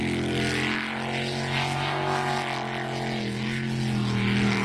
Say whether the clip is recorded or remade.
recorded